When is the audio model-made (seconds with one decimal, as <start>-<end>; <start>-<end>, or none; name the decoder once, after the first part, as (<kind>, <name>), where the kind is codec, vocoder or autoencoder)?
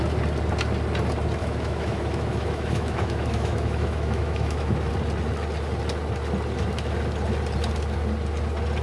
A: 1.4-4.9 (autoencoder, DAC-VAE)